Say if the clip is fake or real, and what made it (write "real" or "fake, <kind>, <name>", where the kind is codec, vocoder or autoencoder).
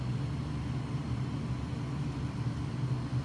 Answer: real